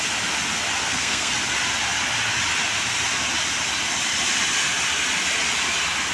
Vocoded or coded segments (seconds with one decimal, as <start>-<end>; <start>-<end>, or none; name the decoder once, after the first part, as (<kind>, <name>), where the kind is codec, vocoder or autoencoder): 0.8-1.3 (codec, SNAC)